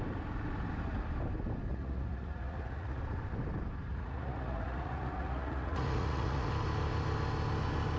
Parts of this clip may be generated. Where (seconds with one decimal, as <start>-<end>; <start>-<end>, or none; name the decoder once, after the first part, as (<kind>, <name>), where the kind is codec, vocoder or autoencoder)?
1.7-3.0 (vocoder, Vocos); 3.9-6.5